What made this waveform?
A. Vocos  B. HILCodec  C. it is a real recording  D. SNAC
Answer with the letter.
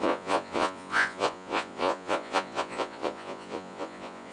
A